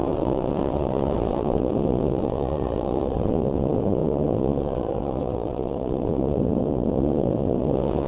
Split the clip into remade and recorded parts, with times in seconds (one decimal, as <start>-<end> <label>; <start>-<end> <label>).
0.0-8.1 remade